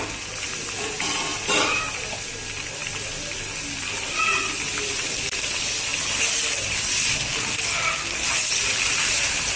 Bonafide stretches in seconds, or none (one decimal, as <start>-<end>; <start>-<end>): 0.0-9.6

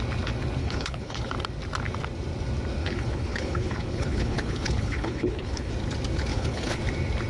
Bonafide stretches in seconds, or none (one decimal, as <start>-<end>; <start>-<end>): 0.0-0.6; 1.3-2.8; 5.7-6.3; 6.8-7.3